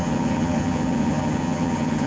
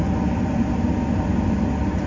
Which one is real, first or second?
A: second